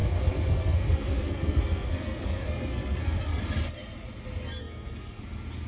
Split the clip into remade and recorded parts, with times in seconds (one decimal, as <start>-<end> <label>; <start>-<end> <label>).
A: 0.0-3.4 remade; 3.4-4.6 recorded; 4.6-5.2 remade; 5.2-5.7 recorded